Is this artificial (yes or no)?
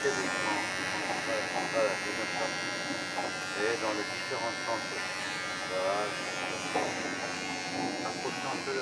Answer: no